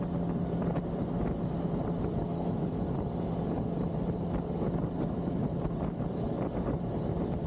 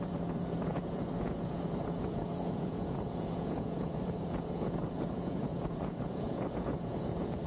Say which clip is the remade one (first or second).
second